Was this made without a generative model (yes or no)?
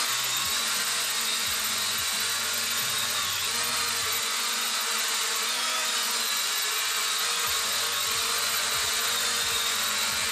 no